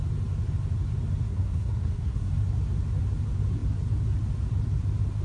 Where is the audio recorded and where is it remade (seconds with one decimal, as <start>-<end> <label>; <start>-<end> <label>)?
0.0-1.3 recorded; 1.3-2.3 remade; 2.3-5.2 recorded